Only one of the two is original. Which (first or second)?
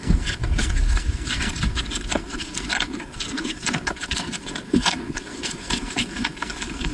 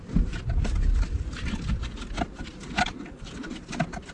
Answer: second